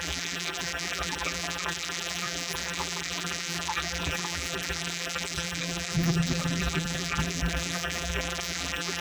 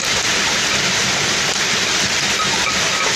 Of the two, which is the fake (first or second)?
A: first